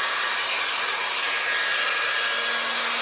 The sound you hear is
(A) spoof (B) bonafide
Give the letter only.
B